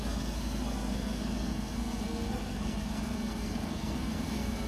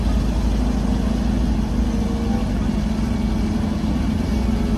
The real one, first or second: second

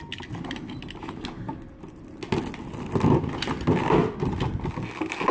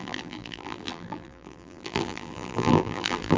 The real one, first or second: first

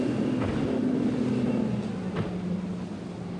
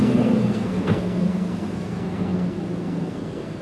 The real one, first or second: first